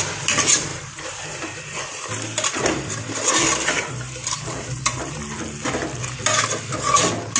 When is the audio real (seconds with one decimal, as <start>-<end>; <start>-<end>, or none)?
0.0-0.7; 5.1-7.4